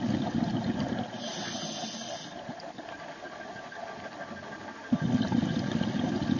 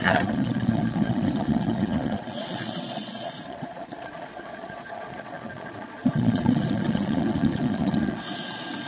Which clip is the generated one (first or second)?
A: second